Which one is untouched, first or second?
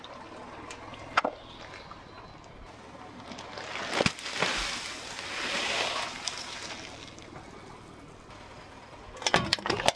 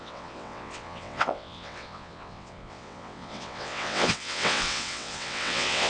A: first